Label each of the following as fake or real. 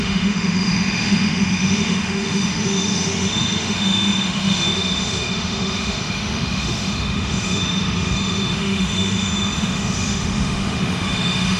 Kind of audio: fake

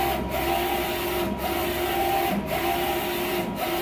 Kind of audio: real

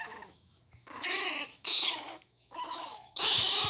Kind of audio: fake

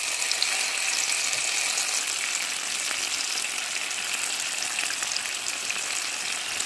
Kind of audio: real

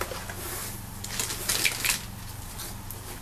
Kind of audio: real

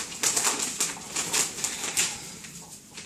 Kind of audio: real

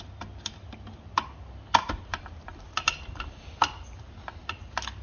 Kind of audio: real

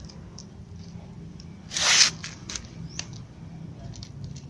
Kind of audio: real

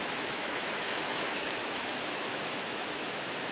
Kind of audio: fake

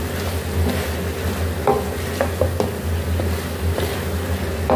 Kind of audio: real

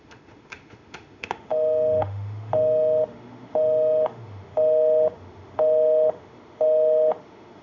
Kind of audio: fake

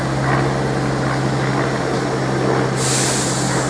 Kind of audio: real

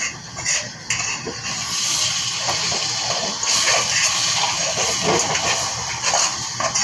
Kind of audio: real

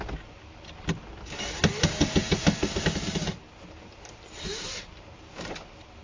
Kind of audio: real